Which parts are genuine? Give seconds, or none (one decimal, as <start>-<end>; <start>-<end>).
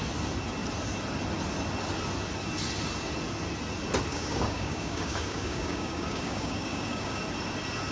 0.0-4.1; 7.2-7.9